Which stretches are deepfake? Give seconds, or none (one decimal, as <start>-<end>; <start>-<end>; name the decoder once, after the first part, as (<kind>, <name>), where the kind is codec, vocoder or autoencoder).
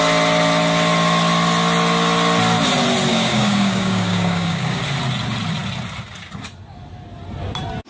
3.1-4.8 (codec, DAC)